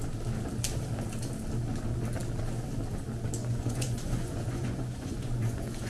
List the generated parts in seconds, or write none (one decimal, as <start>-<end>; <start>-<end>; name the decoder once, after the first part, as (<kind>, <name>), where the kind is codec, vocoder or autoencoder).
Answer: 3.4-5.9 (vocoder, Vocos)